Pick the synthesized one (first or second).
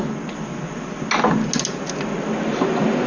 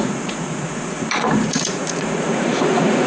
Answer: second